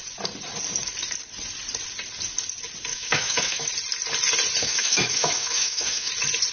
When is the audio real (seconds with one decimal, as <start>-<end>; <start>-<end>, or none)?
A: 0.0-2.9; 3.7-4.6; 6.1-6.5